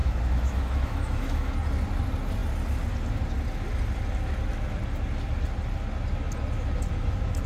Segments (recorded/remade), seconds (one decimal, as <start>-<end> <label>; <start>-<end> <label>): 0.0-1.5 remade; 1.5-7.5 recorded